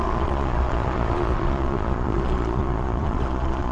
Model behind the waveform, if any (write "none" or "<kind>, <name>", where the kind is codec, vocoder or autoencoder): vocoder, Vocos